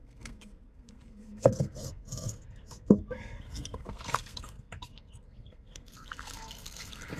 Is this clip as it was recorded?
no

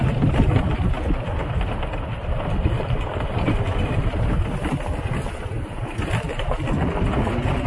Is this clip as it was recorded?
yes